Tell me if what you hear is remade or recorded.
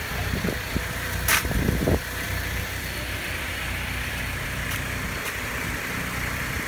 remade